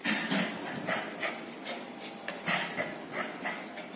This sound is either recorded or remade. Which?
recorded